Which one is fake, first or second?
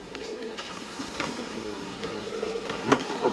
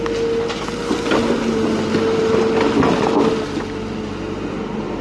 first